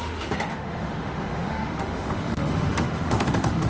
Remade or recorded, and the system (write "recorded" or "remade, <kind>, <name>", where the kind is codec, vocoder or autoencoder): remade, autoencoder, DAC-VAE